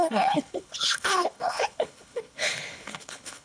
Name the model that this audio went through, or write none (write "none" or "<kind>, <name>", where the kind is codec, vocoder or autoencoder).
codec, HILCodec